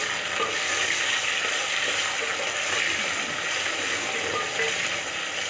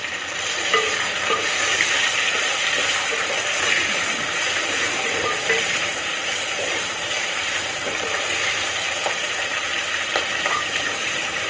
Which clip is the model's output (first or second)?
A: second